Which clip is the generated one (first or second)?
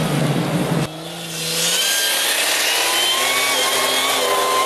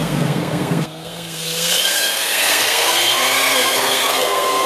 second